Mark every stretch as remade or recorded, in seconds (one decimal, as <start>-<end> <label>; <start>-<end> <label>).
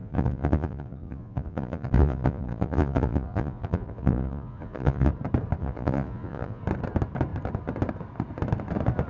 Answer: 0.0-5.1 remade; 5.1-5.6 recorded; 5.6-6.6 remade; 6.6-9.1 recorded